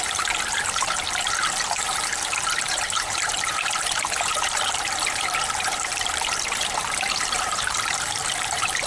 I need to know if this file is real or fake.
fake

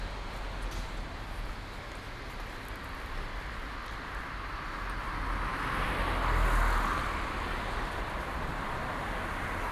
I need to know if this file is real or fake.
real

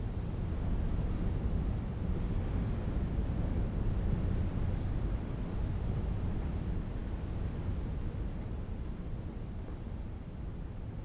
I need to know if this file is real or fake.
real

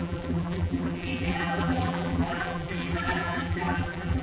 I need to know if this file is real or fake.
fake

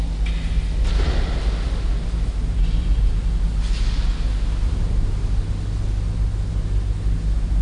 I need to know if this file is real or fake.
real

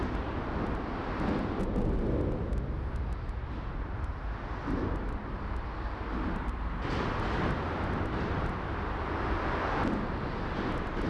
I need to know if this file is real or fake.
real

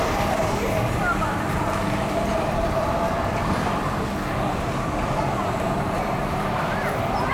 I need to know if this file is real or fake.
fake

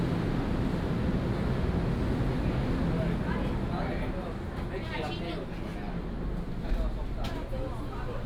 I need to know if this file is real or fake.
real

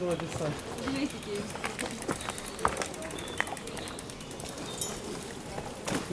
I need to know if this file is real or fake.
real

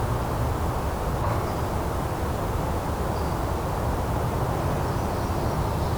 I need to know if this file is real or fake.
real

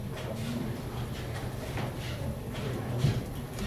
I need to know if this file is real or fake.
fake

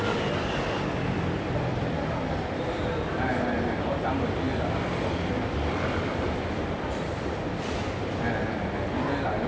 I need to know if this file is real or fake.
fake